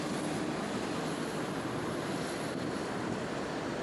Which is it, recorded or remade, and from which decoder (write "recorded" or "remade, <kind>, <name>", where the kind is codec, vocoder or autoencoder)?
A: recorded